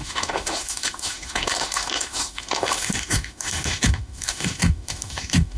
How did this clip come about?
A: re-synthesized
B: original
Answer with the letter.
A